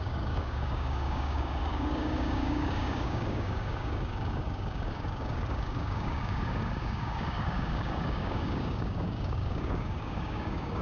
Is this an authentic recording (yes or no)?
no